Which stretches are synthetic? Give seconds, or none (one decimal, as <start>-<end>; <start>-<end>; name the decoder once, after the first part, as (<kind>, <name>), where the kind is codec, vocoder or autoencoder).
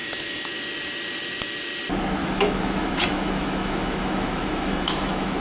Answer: 0.0-0.5 (autoencoder, DAC-VAE); 2.2-5.4